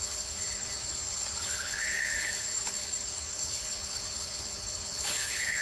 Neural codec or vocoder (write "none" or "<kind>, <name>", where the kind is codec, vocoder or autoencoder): codec, HILCodec